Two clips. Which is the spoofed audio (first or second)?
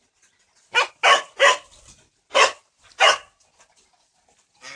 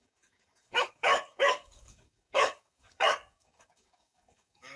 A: second